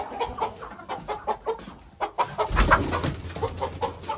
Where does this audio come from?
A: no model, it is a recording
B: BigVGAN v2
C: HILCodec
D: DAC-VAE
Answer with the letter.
A